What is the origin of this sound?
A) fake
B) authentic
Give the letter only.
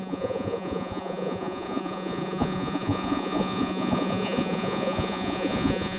A